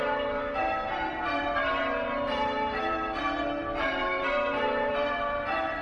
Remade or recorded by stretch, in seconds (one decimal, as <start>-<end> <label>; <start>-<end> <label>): 0.0-5.8 remade